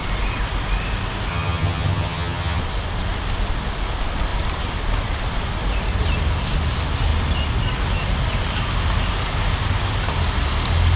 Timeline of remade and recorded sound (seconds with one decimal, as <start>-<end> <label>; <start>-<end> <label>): 0.0-1.3 recorded; 1.3-2.6 remade; 2.6-10.9 recorded